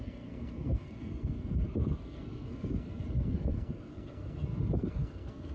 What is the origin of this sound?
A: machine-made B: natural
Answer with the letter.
A